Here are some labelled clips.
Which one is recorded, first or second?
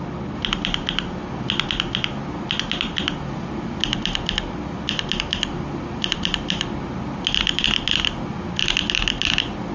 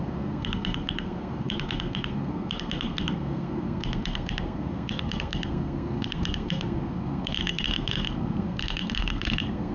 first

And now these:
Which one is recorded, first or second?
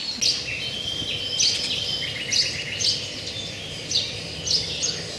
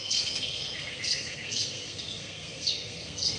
first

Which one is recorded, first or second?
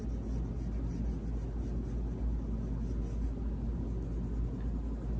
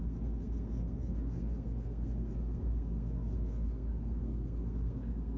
first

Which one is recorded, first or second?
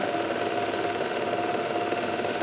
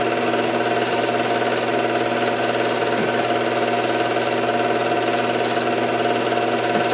second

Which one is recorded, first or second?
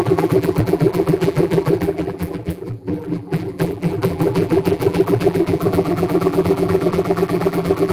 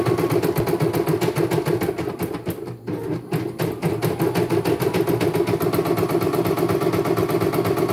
second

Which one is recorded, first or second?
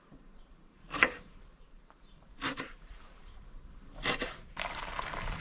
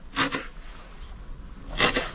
second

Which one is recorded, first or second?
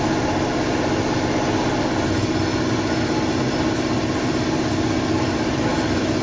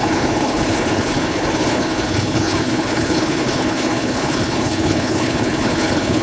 first